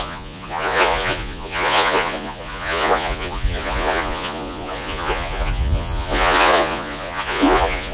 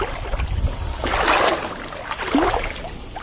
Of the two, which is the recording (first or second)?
second